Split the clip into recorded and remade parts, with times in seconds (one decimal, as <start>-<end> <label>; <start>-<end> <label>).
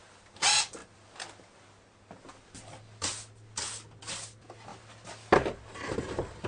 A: 0.0-6.5 recorded